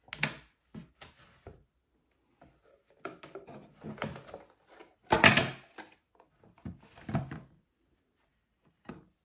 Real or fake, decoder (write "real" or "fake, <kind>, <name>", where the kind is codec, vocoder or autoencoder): real